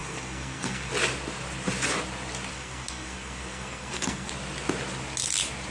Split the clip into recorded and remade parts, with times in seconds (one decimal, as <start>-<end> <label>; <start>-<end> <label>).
0.0-0.9 remade; 0.9-2.5 recorded; 2.5-4.3 remade; 4.3-5.7 recorded